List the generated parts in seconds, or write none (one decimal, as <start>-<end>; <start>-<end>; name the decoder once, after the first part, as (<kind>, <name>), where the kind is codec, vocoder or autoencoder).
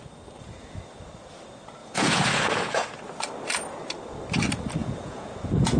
1.8-3.0 (vocoder, Vocos); 4.8-5.8